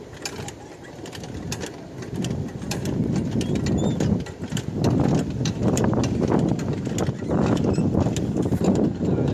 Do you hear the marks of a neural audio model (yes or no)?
no